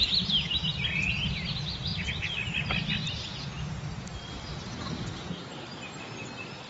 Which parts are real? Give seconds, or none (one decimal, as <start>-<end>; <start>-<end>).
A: 0.0-6.7